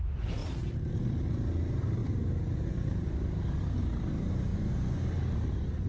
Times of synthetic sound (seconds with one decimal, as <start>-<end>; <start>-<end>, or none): 4.5-5.0